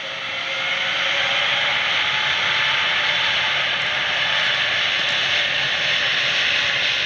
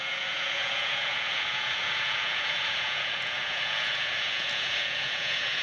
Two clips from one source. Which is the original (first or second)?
first